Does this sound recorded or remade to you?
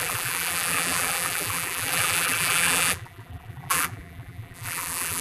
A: remade